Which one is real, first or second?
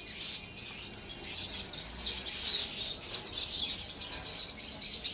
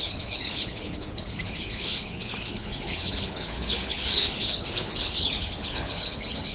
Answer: first